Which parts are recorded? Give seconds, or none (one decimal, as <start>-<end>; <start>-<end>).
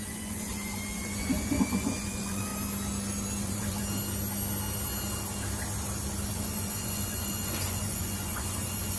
2.5-3.4; 3.8-6.3